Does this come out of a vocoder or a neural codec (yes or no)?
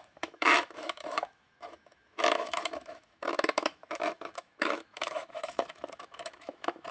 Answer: yes